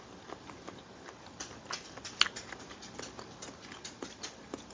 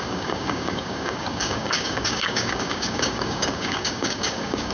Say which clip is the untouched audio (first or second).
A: first